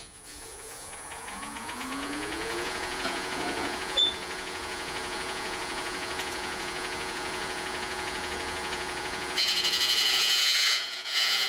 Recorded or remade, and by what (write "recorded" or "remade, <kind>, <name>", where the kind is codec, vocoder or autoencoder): remade, vocoder, Vocos